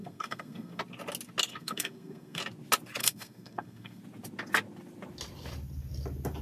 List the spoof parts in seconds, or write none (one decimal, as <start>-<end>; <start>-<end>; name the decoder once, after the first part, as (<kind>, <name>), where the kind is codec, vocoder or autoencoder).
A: 0.0-0.8 (codec, SNAC); 1.5-2.4; 3.0-4.0